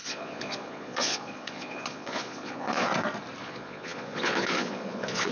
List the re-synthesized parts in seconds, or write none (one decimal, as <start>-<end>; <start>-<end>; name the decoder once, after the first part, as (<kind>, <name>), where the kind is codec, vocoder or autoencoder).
0.0-2.9 (vocoder, Vocos); 3.4-5.3